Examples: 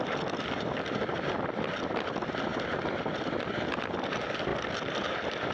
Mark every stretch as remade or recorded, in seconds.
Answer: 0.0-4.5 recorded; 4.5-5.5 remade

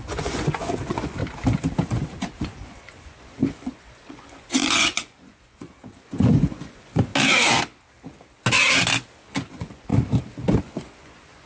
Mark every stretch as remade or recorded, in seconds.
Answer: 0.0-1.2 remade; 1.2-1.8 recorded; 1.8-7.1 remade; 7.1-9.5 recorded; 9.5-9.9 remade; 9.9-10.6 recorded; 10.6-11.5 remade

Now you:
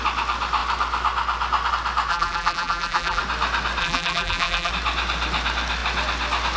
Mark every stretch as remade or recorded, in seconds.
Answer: 0.0-2.1 recorded; 2.1-3.2 remade; 3.2-3.8 recorded; 3.8-4.7 remade; 4.7-6.6 recorded

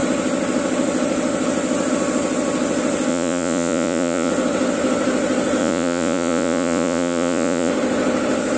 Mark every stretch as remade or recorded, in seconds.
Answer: 0.0-3.1 recorded; 3.1-4.3 remade; 4.3-5.6 recorded; 5.6-7.7 remade; 7.7-8.6 recorded

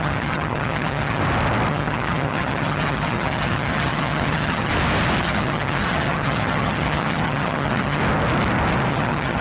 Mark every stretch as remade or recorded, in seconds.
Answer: 0.0-1.2 remade; 1.2-1.7 recorded; 1.7-4.7 remade; 4.7-5.2 recorded; 5.2-8.0 remade; 8.0-8.9 recorded; 8.9-9.4 remade